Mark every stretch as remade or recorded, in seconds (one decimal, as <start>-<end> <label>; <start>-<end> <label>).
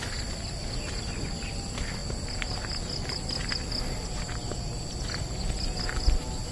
0.0-6.5 recorded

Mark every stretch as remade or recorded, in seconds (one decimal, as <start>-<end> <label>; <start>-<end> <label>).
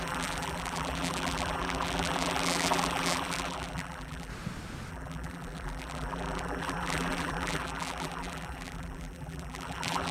0.0-4.3 remade; 4.3-4.9 recorded; 4.9-10.1 remade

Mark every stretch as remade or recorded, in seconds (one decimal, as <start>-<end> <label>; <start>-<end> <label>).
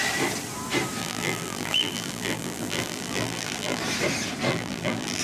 0.0-1.0 recorded; 1.0-3.8 remade; 3.8-4.5 recorded; 4.5-5.2 remade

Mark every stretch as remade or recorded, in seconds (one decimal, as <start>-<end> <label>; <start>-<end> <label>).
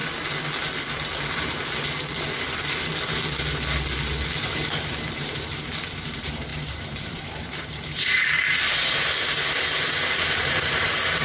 0.0-4.5 recorded; 4.5-11.2 remade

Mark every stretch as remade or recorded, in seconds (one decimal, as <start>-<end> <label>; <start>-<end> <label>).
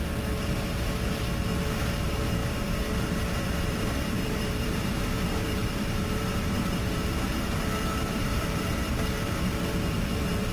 0.0-1.5 remade; 1.5-2.0 recorded; 2.0-10.5 remade